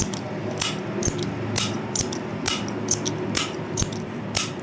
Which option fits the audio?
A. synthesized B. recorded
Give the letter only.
B